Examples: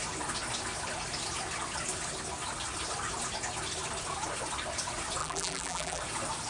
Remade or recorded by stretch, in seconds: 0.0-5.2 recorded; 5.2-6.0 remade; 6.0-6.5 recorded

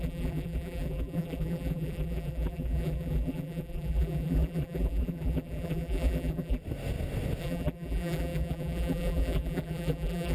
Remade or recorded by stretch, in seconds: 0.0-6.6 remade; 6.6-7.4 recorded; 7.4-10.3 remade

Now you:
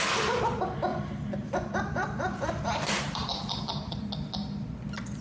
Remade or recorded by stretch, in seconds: 0.0-0.9 recorded; 0.9-4.0 remade; 4.0-5.2 recorded